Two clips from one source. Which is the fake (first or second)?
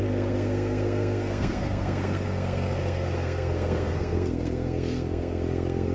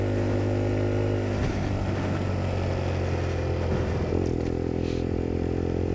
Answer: first